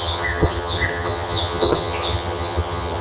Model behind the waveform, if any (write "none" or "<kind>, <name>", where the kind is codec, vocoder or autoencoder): vocoder, HiFi-GAN